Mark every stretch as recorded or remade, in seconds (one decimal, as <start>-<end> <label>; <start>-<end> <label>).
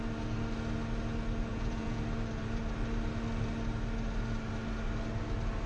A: 0.0-1.5 recorded; 1.5-2.0 remade; 2.0-5.7 recorded